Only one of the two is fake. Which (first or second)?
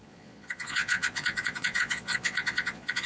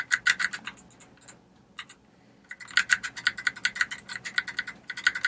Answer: first